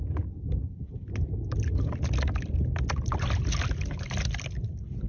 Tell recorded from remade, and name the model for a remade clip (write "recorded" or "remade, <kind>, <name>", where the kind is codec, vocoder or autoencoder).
recorded